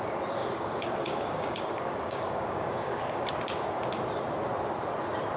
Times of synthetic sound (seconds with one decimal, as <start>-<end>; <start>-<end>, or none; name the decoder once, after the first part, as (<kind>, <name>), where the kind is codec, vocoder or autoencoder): 0.4-3.3 (codec, DAC)

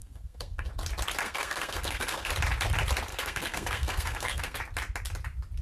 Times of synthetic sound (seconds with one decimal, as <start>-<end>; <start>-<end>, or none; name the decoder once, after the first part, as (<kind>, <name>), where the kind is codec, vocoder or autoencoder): 0.0-0.7 (codec, SNAC); 1.2-2.3; 3.1-4.6

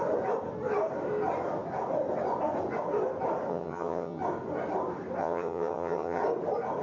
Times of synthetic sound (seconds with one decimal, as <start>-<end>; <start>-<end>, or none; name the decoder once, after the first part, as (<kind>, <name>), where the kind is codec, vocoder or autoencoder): 3.5-4.2 (vocoder, HiFi-GAN); 5.2-6.2

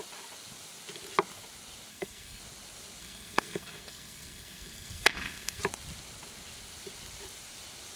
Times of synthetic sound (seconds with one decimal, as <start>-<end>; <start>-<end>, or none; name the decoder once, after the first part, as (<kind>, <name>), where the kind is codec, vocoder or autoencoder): 1.9-2.4 (codec, SNAC); 3.0-5.6

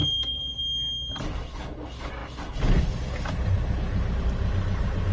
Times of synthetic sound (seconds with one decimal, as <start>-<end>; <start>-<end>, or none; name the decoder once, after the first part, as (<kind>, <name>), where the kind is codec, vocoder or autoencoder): 0.0-0.6 (codec, DAC)

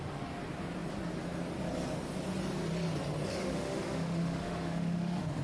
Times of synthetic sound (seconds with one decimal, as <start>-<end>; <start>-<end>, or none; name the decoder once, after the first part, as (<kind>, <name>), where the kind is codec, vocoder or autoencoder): 3.3-5.4 (autoencoder, DAC-VAE)

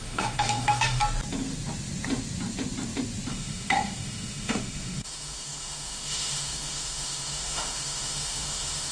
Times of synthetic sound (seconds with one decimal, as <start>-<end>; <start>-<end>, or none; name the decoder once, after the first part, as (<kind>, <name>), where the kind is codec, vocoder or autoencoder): 0.0-1.0 (autoencoder, DAC-VAE); 3.3-8.9

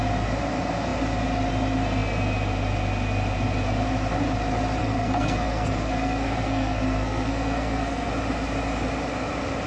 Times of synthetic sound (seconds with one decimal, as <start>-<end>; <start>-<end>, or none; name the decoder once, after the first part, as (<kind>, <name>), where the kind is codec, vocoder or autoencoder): 4.8-8.1 (codec, SNAC)